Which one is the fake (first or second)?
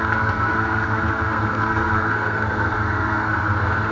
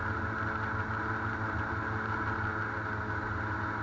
first